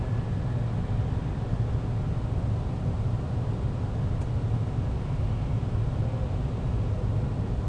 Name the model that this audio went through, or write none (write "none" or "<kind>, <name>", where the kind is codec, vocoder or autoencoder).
none